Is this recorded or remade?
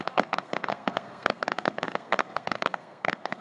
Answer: remade